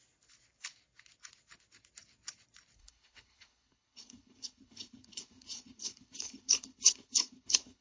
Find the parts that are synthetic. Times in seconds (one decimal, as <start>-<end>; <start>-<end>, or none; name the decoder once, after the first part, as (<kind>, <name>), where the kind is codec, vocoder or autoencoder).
2.8-7.8 (codec, HILCodec)